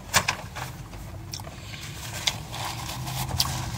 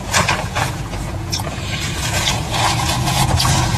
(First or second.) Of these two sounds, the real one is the first